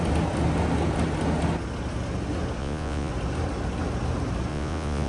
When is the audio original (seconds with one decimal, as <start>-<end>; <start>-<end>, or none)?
0.0-2.6; 3.1-4.5